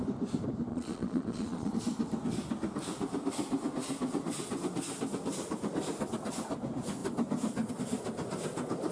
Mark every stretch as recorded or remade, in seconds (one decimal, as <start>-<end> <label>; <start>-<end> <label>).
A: 0.0-0.7 recorded; 0.7-1.7 remade; 1.7-8.9 recorded